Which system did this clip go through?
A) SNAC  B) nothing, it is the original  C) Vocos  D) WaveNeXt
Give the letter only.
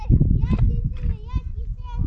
B